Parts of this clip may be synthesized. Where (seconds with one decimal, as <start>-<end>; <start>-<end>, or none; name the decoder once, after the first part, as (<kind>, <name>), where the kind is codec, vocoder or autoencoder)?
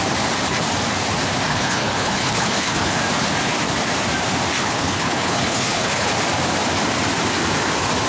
1.5-3.0 (codec, HILCodec); 4.6-6.1